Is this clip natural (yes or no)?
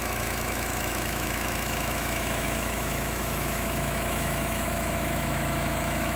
no